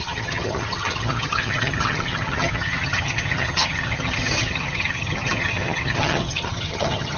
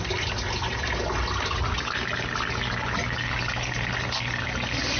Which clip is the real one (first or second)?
second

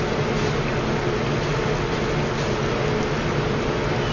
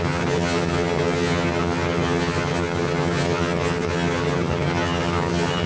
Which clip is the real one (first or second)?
first